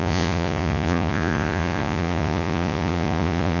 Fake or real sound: fake